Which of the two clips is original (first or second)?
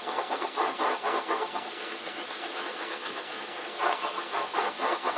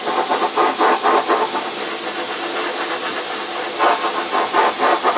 second